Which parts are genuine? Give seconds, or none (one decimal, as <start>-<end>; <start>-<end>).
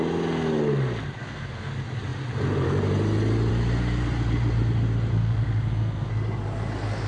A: 0.0-1.2; 1.7-5.1; 6.1-7.1